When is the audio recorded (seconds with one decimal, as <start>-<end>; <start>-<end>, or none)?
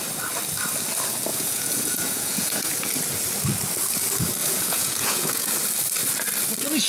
0.0-1.3; 2.9-4.4; 5.5-6.9